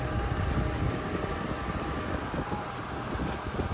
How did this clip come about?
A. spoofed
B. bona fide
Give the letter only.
B